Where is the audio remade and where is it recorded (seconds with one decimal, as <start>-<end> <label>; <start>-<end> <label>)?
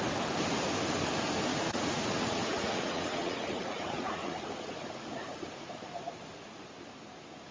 0.0-1.5 recorded; 1.5-5.8 remade; 5.8-7.5 recorded